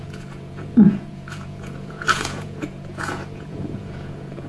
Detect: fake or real fake